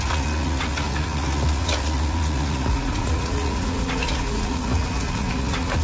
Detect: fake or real fake